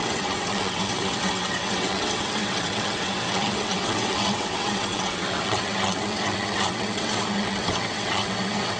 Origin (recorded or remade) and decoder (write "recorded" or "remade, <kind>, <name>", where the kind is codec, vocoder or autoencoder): remade, vocoder, WaveNeXt